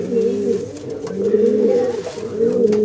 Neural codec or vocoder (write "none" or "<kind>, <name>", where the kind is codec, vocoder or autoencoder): none